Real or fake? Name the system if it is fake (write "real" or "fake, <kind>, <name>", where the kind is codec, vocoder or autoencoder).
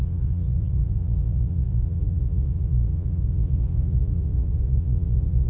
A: fake, vocoder, Vocos